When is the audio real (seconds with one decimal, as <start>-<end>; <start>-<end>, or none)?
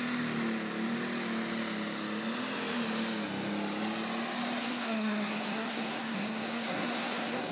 0.0-4.6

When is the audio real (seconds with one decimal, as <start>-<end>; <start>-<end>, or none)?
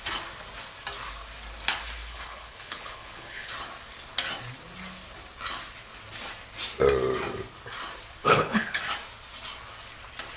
0.0-2.0; 3.5-8.2; 8.8-10.4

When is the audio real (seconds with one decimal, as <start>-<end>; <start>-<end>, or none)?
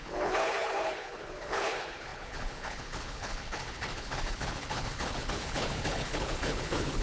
none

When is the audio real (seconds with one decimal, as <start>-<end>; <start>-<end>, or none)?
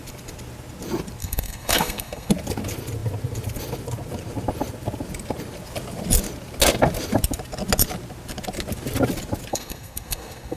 0.0-1.2; 2.3-9.5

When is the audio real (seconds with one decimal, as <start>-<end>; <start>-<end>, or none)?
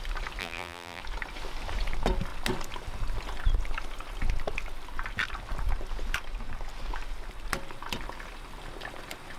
0.0-0.4; 1.0-9.4